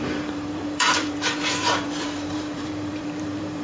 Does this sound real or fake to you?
fake